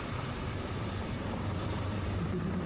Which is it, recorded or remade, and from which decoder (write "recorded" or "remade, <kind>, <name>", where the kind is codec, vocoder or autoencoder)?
remade, vocoder, BigVGAN v2